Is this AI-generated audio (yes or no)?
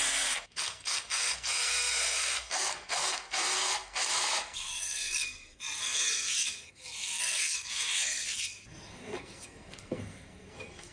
yes